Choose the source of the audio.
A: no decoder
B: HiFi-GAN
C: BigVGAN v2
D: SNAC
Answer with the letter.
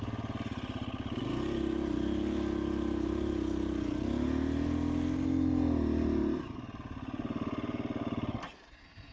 A